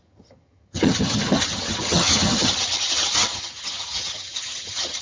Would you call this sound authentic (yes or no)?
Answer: no